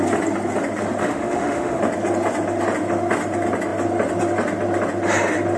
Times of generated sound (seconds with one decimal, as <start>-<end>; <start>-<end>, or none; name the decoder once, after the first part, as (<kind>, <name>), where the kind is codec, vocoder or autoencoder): 1.0-1.8 (autoencoder, DAC-VAE)